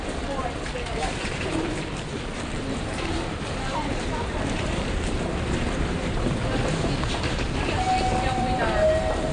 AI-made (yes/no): yes